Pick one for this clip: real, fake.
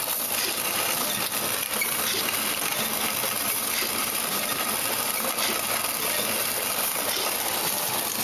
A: real